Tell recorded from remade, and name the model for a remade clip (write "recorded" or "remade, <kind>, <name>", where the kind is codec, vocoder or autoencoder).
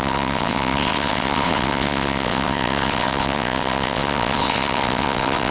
remade, vocoder, WaveNeXt